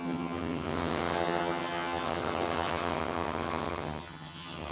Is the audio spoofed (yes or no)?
yes